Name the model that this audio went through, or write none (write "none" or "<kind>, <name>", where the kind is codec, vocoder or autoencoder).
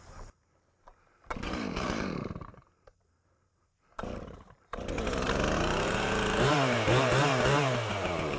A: vocoder, BigVGAN v2